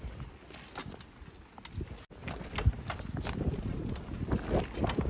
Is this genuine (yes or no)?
yes